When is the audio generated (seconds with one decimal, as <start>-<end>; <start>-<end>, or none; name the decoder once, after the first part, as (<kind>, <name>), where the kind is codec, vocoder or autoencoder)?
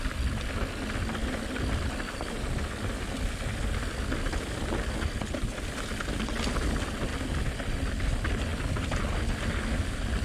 none